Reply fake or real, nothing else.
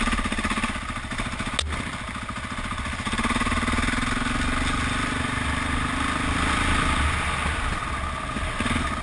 real